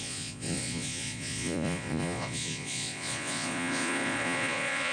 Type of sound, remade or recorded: remade